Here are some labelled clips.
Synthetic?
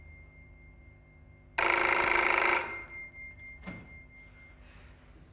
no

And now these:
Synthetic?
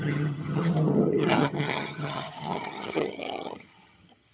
yes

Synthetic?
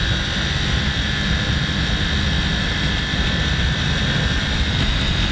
no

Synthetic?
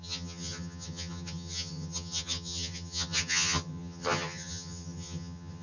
yes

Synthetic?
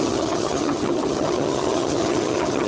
yes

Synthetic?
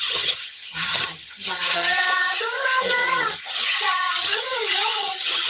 yes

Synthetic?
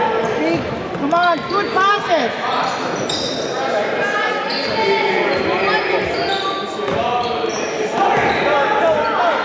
no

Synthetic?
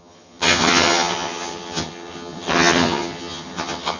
yes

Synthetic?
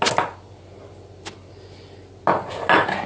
no